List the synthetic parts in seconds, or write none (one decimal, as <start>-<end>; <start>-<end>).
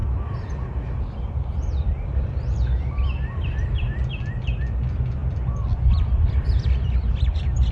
0.0-7.7